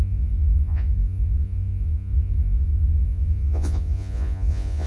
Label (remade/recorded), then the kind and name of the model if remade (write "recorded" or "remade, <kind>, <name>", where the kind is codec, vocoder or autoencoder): remade, vocoder, Vocos